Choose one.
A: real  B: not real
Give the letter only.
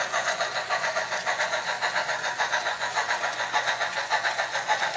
B